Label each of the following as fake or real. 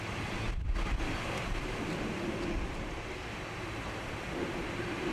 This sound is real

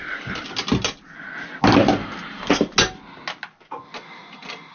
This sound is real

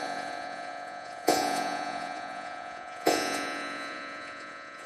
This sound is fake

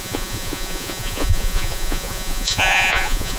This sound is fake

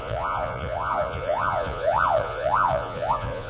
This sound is fake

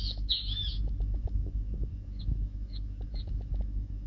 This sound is fake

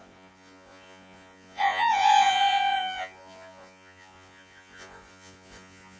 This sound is fake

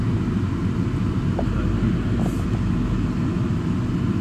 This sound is real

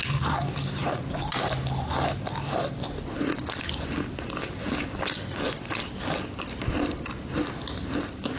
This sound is real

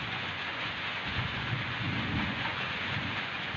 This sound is fake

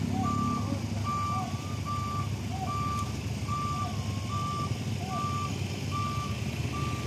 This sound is real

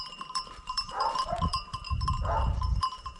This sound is fake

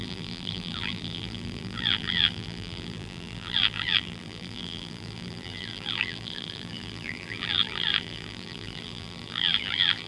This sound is fake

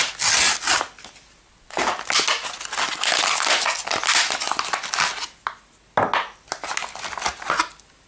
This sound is real